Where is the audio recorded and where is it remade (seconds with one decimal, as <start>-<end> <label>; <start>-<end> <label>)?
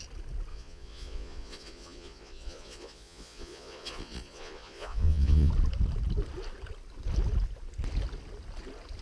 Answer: 0.0-0.5 recorded; 0.5-5.5 remade; 5.5-9.0 recorded